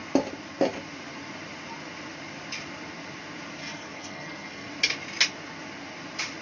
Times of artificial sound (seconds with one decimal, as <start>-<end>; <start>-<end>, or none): 3.6-4.7